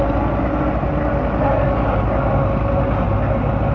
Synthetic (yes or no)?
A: no